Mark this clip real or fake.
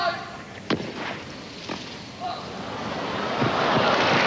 real